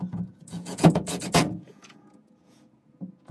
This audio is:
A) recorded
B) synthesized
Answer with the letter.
B